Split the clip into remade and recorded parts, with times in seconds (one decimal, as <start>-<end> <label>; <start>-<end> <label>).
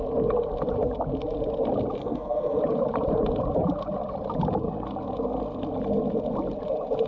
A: 0.0-2.0 recorded; 2.0-2.6 remade; 2.6-7.1 recorded